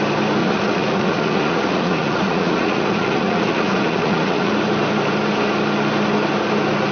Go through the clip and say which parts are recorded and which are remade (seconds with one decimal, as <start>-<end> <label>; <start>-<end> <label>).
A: 0.0-0.4 recorded; 0.4-4.5 remade; 4.5-6.9 recorded